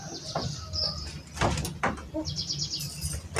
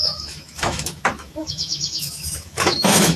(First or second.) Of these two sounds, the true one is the first